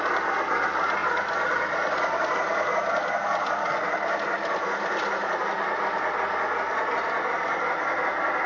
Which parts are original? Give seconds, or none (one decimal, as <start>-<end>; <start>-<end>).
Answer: 0.0-8.5